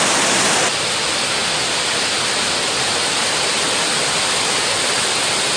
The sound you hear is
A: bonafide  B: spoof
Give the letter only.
A